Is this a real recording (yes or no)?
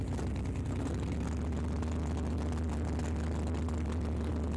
yes